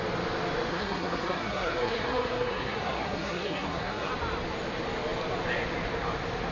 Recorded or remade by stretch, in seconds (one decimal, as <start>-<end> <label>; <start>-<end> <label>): 0.0-0.7 recorded; 0.7-4.1 remade; 4.1-6.5 recorded